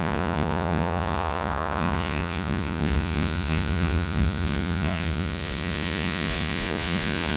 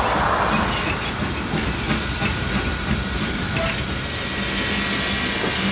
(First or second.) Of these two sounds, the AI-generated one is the first